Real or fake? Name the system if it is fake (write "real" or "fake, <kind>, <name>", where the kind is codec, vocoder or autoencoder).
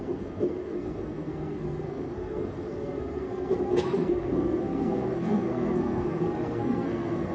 fake, codec, SNAC